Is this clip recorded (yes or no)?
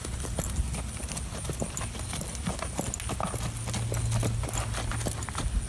yes